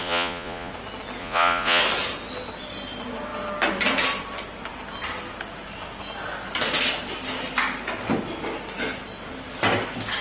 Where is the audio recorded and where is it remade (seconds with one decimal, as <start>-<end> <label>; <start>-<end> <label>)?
0.0-0.7 remade; 0.7-1.2 recorded; 1.2-1.8 remade; 1.8-10.2 recorded